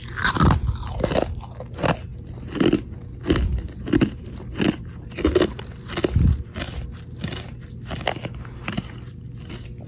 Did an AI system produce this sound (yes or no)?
no